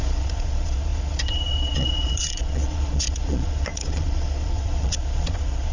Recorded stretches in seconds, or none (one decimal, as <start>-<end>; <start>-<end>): none